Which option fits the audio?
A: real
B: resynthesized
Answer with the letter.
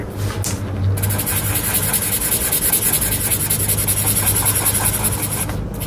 A